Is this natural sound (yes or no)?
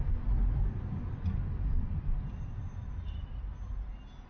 yes